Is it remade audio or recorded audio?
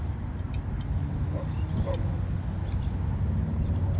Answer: recorded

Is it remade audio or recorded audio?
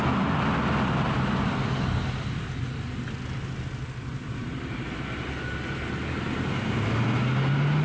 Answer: recorded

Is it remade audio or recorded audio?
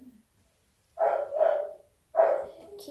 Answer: recorded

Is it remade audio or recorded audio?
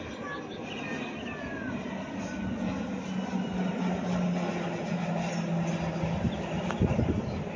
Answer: recorded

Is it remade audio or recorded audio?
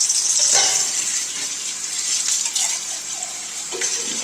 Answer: recorded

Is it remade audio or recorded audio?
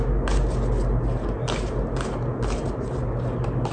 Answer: recorded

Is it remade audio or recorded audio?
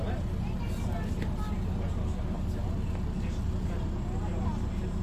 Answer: recorded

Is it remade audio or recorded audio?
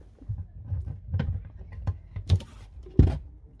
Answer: remade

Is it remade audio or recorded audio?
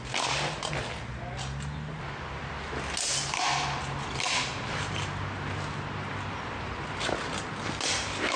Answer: recorded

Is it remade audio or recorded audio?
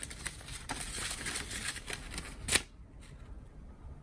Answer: recorded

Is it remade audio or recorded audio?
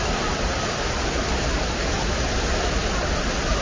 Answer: recorded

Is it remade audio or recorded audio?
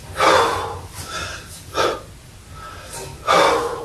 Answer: recorded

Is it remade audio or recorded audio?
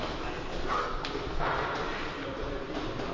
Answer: recorded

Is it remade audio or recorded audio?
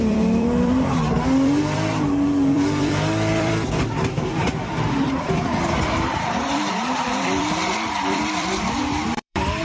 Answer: remade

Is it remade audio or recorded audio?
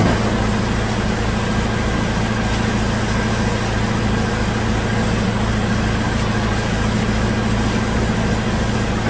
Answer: recorded